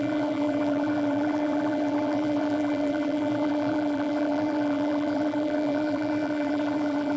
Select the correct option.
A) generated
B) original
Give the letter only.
A